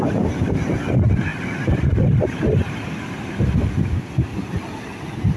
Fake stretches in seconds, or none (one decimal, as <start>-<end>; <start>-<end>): none